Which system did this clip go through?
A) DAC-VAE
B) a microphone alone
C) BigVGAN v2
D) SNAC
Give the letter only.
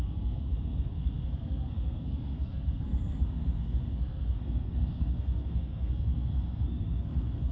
D